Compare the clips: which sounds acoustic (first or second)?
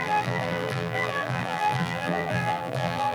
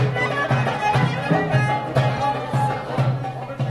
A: second